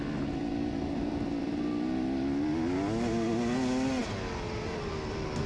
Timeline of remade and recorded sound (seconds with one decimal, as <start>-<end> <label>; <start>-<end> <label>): 0.0-5.5 recorded